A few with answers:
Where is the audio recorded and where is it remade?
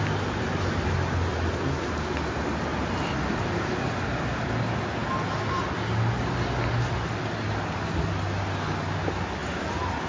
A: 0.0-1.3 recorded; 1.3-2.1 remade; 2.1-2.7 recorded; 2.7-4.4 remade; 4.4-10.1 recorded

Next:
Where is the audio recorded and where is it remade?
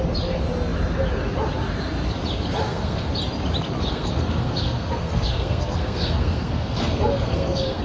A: 0.0-2.6 recorded; 2.6-3.1 remade; 3.1-3.9 recorded; 3.9-7.8 remade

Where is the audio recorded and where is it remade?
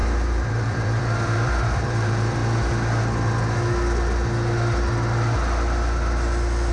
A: 0.0-2.4 remade; 2.4-6.7 recorded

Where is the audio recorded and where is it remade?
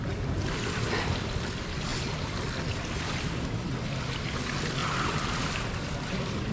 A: 0.0-6.5 recorded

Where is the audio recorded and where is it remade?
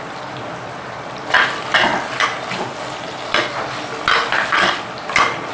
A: 0.0-5.5 recorded